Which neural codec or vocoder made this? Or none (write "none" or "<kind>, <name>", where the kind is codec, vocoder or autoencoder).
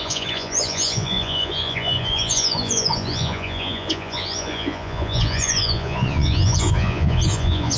vocoder, Vocos